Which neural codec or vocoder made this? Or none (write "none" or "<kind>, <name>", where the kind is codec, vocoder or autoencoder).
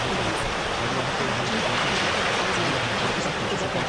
none